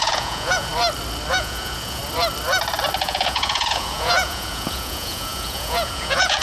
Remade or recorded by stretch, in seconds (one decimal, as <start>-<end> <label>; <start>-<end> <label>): 0.0-0.7 remade; 0.7-1.3 recorded; 1.3-2.0 remade; 2.0-3.0 recorded; 3.0-6.4 remade